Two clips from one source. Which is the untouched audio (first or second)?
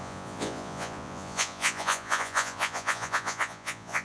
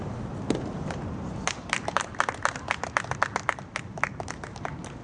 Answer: second